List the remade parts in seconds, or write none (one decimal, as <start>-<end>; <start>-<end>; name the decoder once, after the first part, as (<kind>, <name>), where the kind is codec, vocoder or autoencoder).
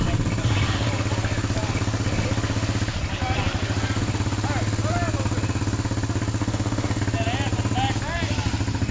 6.4-7.0 (autoencoder, DAC-VAE)